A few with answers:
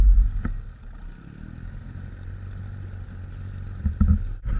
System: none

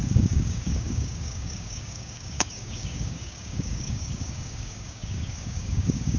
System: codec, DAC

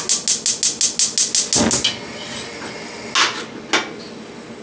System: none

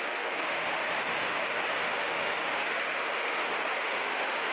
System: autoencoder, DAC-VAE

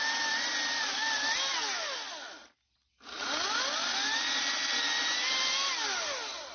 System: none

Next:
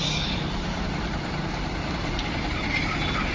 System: none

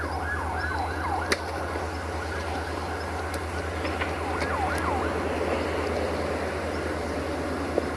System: none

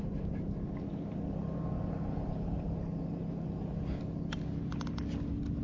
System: none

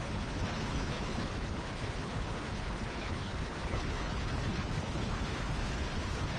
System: codec, HILCodec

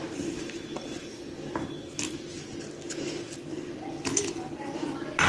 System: none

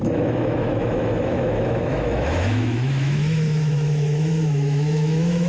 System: autoencoder, DAC-VAE